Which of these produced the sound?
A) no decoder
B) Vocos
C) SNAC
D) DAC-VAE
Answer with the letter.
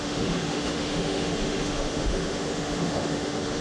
D